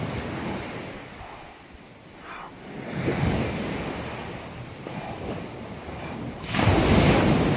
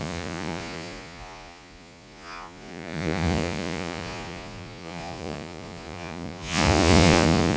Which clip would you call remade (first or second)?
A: second